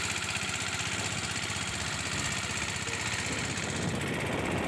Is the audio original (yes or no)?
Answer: yes